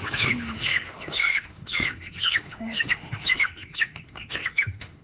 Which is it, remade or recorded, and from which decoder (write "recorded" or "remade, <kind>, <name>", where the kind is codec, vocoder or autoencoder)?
remade, autoencoder, DAC-VAE